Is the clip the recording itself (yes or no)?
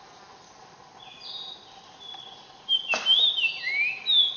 yes